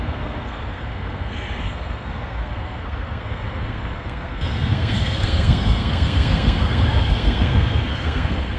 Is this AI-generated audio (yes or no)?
yes